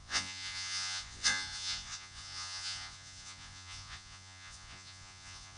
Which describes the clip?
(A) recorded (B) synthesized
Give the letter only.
B